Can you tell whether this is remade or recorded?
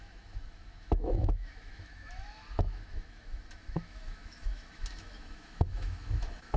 remade